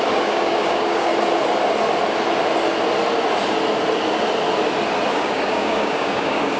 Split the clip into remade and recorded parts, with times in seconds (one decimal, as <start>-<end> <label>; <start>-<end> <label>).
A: 0.0-1.1 remade; 1.1-5.1 recorded; 5.1-6.6 remade